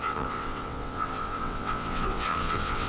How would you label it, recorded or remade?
remade